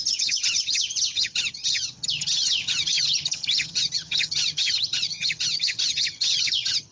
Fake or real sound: fake